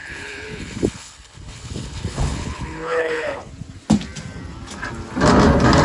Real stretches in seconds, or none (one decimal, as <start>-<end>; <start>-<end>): 3.5-5.8